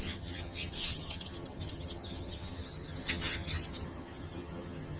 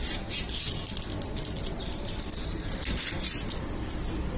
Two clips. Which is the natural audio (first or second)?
second